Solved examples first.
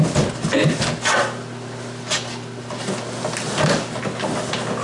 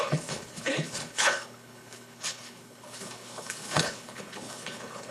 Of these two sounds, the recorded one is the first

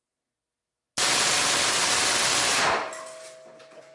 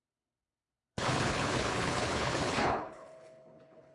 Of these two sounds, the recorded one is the first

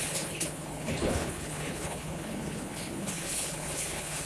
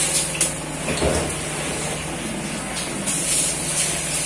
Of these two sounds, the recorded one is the second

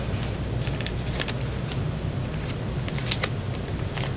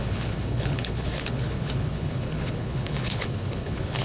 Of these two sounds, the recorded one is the first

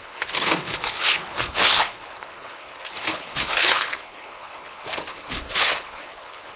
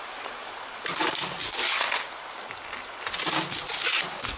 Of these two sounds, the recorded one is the second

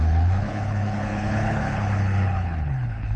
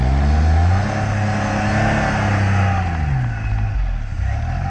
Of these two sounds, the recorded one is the second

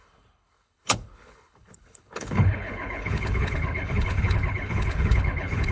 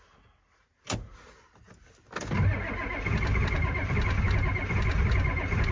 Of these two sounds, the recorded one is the second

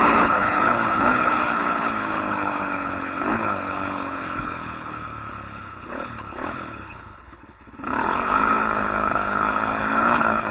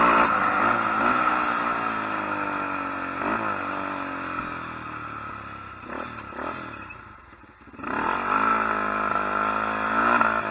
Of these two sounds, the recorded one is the second